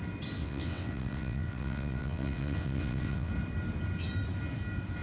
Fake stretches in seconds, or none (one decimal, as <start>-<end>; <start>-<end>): 0.4-3.3